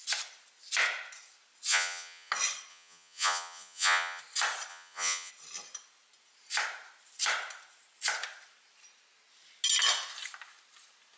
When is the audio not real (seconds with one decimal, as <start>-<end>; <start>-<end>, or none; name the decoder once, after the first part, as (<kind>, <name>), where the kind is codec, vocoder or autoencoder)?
1.7-2.3 (vocoder, Vocos); 2.7-4.2; 4.7-5.3